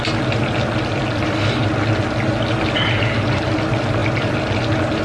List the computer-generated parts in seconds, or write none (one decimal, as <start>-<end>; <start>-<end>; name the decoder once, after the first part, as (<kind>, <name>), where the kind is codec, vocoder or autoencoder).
none